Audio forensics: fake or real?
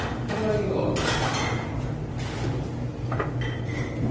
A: real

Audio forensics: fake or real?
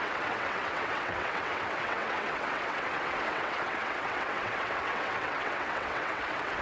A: fake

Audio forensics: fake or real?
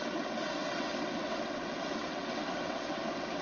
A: fake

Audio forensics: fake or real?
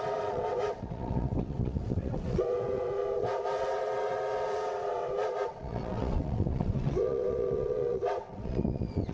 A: fake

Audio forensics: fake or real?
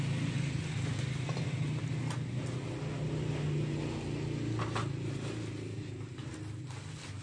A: real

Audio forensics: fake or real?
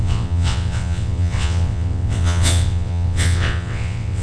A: fake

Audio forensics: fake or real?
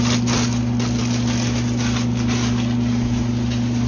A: real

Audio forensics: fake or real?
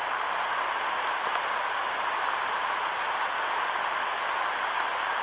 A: real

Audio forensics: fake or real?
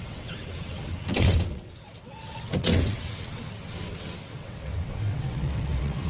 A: fake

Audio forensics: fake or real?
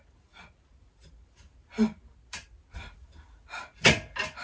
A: real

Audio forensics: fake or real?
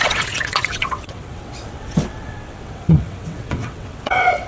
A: fake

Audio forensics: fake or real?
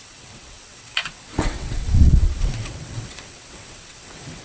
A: fake